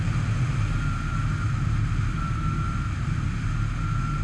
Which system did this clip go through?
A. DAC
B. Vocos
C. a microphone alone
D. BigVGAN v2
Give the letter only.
C